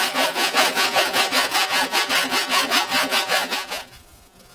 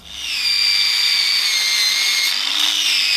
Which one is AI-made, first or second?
first